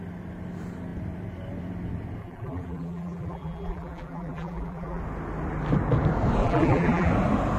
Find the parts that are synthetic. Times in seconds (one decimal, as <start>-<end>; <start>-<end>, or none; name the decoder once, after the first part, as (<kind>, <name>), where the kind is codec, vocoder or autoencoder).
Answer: 2.2-5.0 (vocoder, BigVGAN v2); 6.4-7.1